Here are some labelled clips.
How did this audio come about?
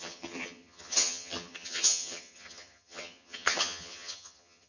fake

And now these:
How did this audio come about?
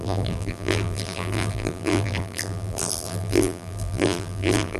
fake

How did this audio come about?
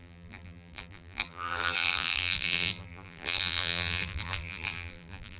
fake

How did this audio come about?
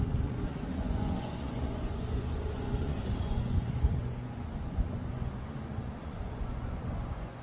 fake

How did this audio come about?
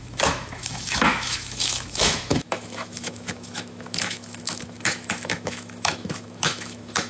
fake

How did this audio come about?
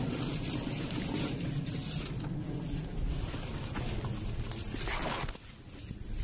real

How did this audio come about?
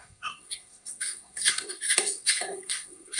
fake